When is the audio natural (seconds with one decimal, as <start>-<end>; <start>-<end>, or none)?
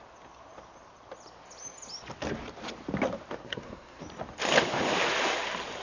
0.0-3.4; 4.0-5.8